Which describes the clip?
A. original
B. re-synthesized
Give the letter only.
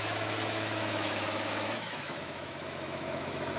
B